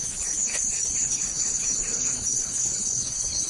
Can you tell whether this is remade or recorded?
remade